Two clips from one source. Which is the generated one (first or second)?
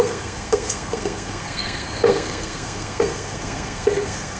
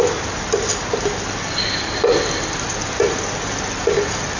first